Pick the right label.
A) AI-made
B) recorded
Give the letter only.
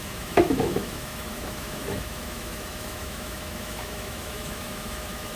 A